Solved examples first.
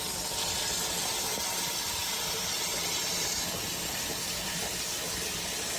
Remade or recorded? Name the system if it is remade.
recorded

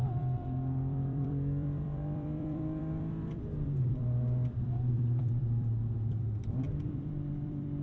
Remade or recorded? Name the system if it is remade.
remade, vocoder, BigVGAN v2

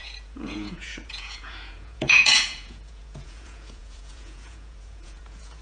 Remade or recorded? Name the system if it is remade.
remade, vocoder, Vocos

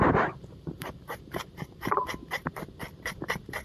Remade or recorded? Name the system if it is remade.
remade, vocoder, BigVGAN v2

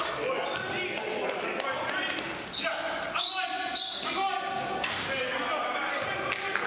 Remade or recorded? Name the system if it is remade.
recorded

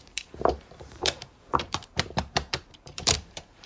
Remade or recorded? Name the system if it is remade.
remade, vocoder, BigVGAN v2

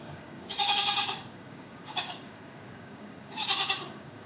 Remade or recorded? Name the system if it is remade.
remade, codec, DAC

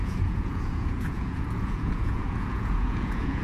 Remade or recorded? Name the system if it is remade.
remade, vocoder, Vocos